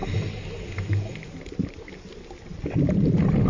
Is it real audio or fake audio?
real